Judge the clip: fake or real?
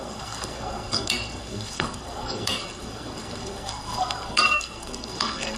fake